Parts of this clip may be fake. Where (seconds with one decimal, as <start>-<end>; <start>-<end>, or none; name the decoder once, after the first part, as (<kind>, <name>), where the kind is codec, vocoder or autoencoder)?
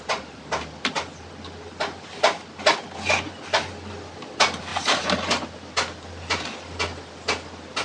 4.7-5.3 (vocoder, BigVGAN v2)